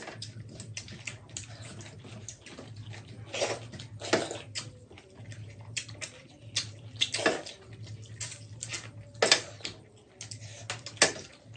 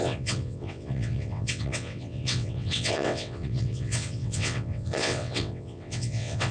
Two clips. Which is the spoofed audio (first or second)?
second